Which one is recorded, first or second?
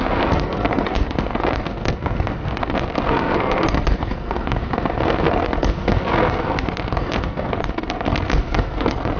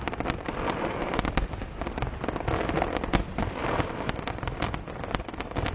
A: second